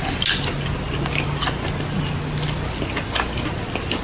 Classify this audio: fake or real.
real